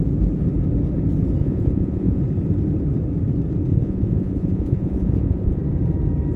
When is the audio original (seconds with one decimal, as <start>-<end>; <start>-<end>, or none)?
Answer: 0.0-1.4; 2.2-3.7; 5.6-6.4